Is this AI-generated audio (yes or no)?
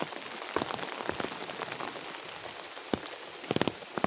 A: no